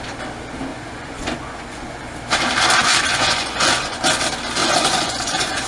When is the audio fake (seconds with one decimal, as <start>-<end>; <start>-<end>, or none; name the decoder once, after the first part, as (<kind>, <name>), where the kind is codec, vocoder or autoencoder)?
0.7-2.0 (vocoder, Vocos); 2.8-4.0; 4.6-5.7